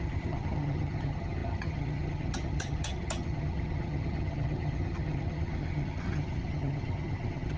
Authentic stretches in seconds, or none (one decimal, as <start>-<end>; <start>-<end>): none